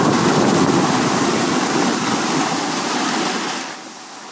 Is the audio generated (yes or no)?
yes